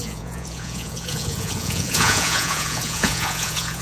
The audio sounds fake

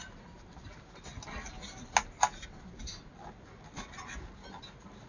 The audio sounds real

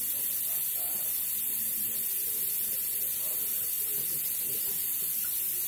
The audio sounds real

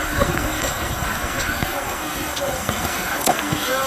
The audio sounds fake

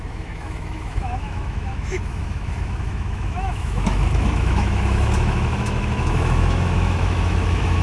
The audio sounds fake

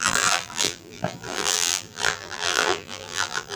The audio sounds fake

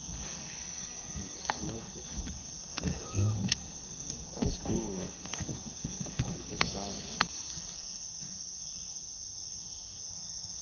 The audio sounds fake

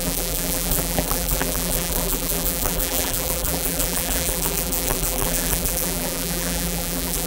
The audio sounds fake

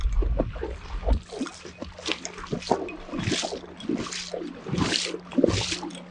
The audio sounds real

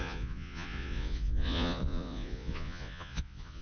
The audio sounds fake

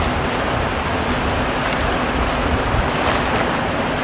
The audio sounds real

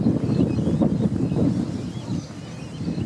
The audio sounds real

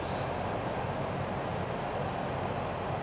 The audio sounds real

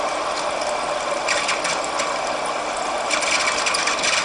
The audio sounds real